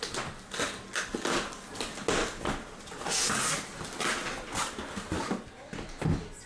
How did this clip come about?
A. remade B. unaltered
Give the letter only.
B